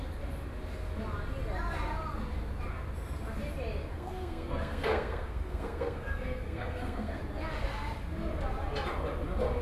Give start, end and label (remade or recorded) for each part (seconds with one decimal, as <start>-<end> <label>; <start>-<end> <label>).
0.0-3.9 recorded; 3.9-7.2 remade; 7.2-9.6 recorded